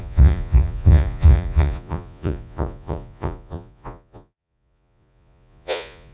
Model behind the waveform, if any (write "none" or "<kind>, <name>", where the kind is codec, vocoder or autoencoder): vocoder, Vocos